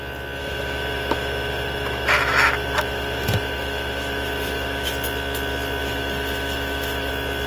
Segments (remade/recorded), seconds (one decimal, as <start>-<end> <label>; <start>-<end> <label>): 0.0-0.4 recorded; 0.4-4.9 remade; 4.9-5.8 recorded; 5.8-7.1 remade; 7.1-7.5 recorded